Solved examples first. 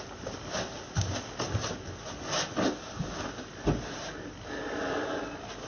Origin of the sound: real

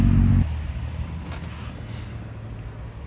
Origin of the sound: real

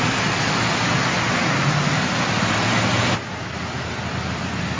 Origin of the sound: real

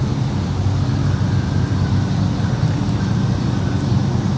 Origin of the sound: real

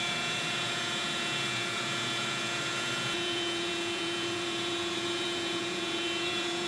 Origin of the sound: fake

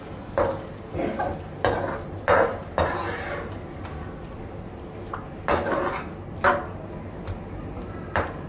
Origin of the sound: real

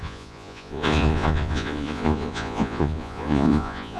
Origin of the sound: fake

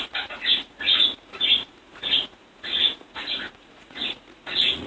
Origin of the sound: fake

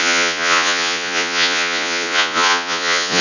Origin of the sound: fake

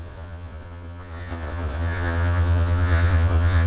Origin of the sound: fake